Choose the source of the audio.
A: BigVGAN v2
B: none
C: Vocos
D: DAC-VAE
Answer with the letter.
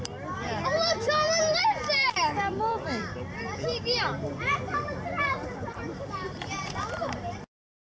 A